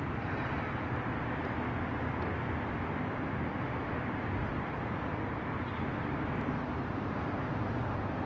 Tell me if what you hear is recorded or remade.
recorded